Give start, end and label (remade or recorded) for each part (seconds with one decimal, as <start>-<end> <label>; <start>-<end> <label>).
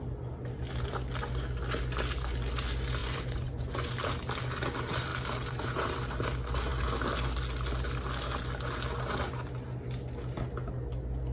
0.0-3.0 recorded; 3.0-3.9 remade; 3.9-11.3 recorded